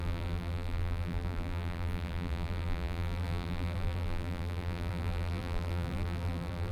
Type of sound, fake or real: fake